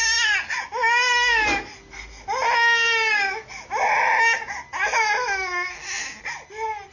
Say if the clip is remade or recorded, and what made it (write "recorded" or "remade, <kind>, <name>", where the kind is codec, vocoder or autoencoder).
recorded